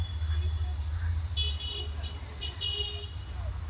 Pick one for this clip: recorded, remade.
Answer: recorded